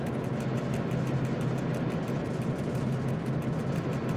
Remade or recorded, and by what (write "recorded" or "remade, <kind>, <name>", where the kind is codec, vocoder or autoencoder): recorded